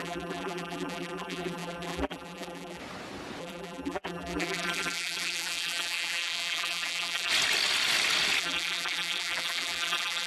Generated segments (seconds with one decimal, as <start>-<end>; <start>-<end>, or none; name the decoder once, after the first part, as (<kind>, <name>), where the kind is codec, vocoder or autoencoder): 0.0-2.8 (vocoder, BigVGAN v2); 3.4-7.3; 8.4-10.3